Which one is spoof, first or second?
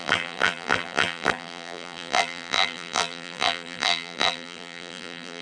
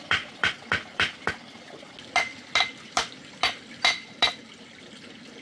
first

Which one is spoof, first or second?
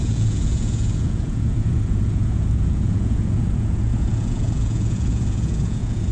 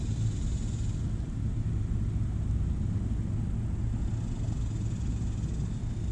first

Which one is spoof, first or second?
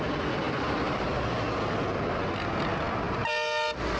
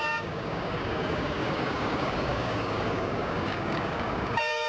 second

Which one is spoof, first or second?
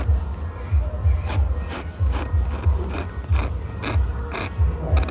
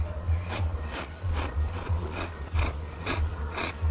second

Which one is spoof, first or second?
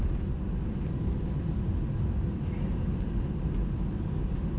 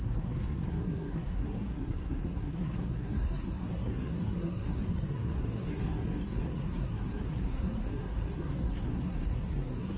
second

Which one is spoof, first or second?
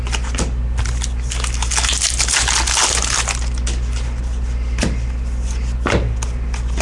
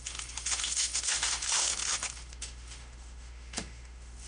second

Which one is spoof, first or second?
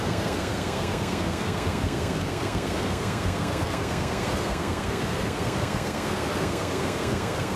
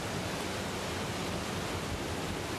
first